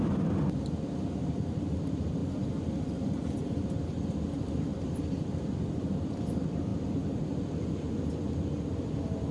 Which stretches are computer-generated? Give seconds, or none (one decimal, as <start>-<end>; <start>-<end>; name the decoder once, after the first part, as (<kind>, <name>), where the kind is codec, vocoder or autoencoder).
none